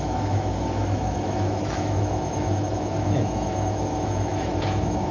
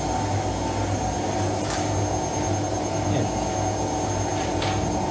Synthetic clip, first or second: first